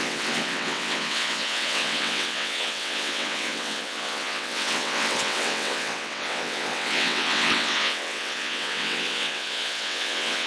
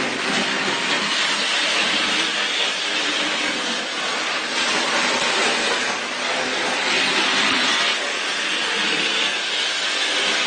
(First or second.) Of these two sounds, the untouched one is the second